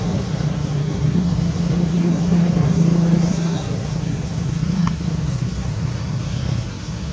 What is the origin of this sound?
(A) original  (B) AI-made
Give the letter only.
B